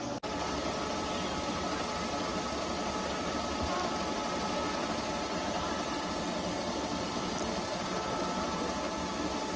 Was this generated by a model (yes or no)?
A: no